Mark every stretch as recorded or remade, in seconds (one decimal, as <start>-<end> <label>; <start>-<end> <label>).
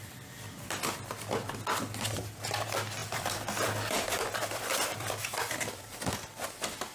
0.0-1.1 remade; 1.1-3.0 recorded; 3.0-6.0 remade; 6.0-6.9 recorded